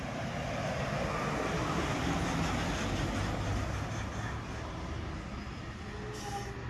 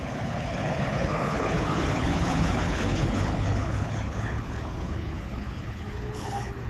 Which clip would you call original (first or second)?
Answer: first